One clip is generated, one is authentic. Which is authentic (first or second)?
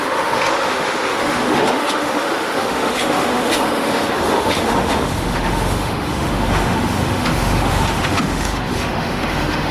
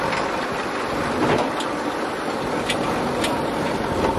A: second